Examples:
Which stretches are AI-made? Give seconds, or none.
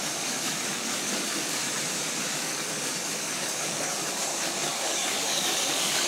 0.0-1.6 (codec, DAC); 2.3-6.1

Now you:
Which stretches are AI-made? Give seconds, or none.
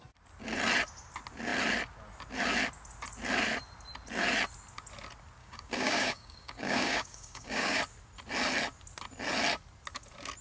5.4-7.8 (codec, DAC)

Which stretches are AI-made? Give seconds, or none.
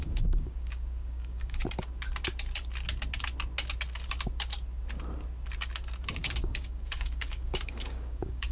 0.0-1.6 (codec, DAC); 6.2-8.5